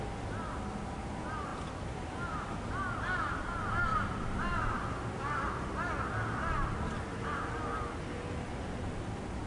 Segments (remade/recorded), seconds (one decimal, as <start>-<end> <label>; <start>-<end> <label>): 0.0-9.5 recorded